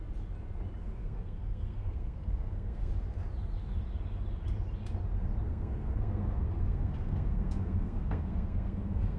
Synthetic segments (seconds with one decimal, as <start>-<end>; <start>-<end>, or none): 1.0-2.9; 5.5-9.2